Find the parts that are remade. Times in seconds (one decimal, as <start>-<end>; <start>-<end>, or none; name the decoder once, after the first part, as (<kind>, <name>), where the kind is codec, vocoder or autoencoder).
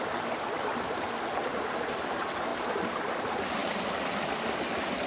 1.5-2.0 (vocoder, BigVGAN v2); 2.5-3.1